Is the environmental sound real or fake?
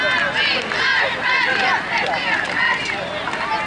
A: real